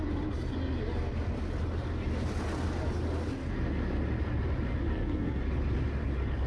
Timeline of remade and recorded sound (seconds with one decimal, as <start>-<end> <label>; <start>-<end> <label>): 0.0-4.9 recorded; 4.9-5.4 remade; 5.4-6.5 recorded